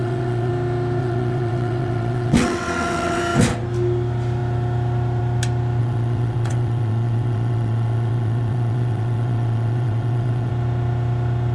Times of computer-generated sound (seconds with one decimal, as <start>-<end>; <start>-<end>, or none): 0.0-0.5; 1.0-3.2; 5.8-10.5